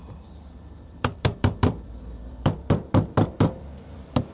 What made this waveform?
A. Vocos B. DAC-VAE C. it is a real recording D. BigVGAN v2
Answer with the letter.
D